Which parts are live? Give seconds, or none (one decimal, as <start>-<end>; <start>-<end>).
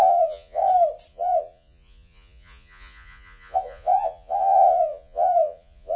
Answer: 0.6-1.1